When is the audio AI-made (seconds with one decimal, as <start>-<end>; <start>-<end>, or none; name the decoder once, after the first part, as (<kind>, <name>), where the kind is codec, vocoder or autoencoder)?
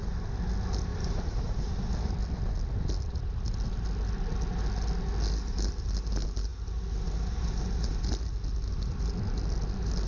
0.9-1.7 (vocoder, BigVGAN v2)